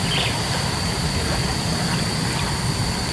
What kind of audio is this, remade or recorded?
recorded